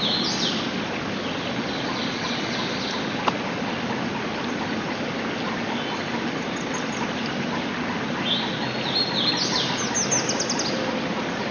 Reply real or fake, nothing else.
real